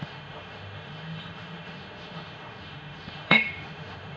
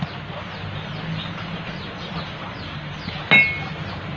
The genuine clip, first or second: second